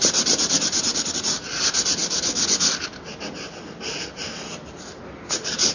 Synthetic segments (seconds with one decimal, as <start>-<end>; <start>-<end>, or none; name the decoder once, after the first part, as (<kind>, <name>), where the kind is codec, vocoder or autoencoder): 0.9-1.5 (vocoder, BigVGAN v2)